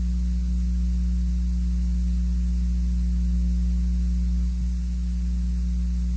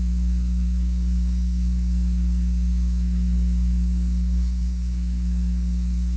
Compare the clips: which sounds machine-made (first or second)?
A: second